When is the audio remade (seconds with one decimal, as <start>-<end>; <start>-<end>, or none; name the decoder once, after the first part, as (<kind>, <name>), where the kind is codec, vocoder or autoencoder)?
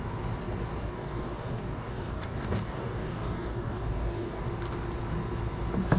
0.8-4.4 (codec, DAC)